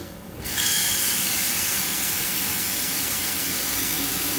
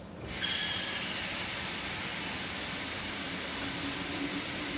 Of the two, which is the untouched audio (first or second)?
second